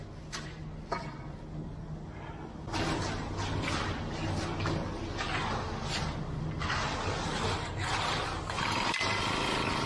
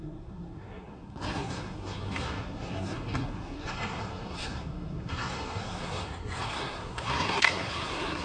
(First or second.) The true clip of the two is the first